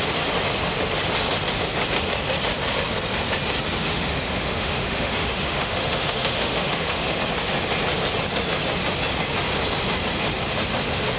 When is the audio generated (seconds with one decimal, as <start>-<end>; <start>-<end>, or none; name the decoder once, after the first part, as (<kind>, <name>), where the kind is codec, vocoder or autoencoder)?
3.8-7.2 (autoencoder, DAC-VAE)